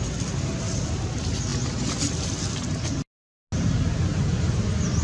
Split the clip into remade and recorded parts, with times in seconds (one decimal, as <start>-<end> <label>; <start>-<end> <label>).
0.0-5.0 recorded